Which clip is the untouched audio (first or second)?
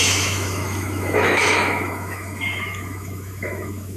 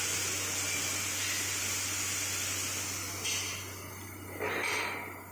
second